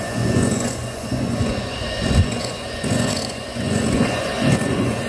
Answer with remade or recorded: remade